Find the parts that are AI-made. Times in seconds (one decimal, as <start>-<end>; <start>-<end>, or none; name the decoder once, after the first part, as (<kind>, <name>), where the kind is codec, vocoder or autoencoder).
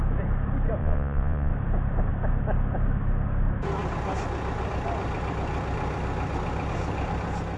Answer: 0.8-1.5 (vocoder, Vocos)